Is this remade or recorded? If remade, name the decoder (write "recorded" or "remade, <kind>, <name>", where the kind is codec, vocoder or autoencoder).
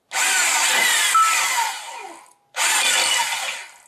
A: recorded